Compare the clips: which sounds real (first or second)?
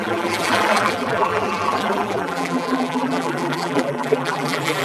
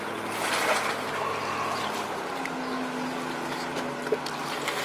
second